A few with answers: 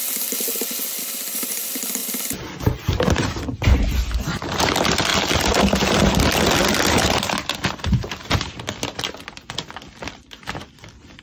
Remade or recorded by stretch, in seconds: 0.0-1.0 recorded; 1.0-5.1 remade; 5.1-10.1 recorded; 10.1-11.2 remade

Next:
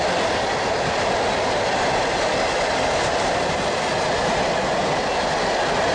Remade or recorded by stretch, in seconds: 0.0-5.9 recorded

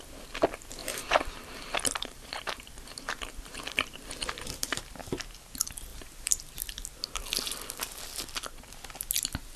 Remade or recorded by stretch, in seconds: 0.0-0.8 recorded; 0.8-4.8 remade; 4.8-5.9 recorded; 5.9-6.6 remade; 6.6-9.6 recorded

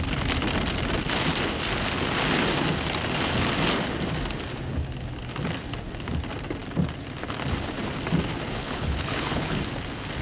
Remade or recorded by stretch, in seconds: 0.0-8.6 recorded; 8.6-9.6 remade; 9.6-10.2 recorded

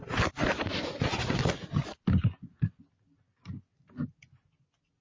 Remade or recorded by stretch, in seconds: 0.0-5.0 recorded

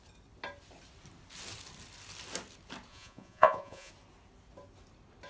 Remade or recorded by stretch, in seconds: 0.0-2.9 recorded; 2.9-3.9 remade; 3.9-5.3 recorded